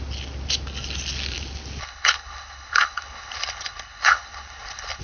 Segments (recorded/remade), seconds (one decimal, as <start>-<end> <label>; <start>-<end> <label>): 0.0-1.8 recorded; 1.8-5.0 remade